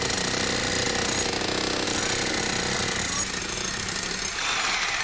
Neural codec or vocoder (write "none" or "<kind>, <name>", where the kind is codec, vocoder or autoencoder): none